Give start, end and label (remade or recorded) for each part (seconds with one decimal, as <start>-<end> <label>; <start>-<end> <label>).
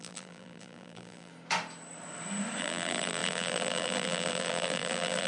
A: 0.0-1.3 remade; 1.3-2.6 recorded; 2.6-5.3 remade